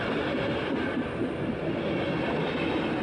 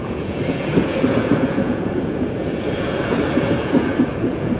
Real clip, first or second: first